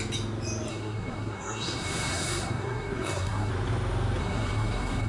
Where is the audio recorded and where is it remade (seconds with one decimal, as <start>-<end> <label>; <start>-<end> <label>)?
0.0-0.7 recorded; 0.7-3.5 remade; 3.5-4.2 recorded; 4.2-5.1 remade